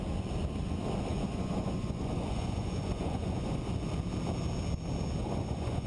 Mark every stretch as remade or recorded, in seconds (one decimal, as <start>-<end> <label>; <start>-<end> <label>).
0.0-1.1 recorded; 1.1-3.6 remade; 3.6-5.2 recorded; 5.2-5.9 remade